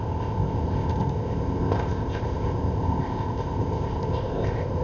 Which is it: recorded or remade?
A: remade